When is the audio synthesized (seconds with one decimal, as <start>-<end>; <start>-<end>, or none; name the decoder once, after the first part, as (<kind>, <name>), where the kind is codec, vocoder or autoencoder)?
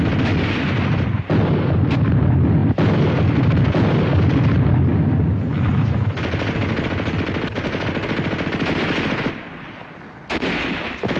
2.6-3.2 (vocoder, BigVGAN v2)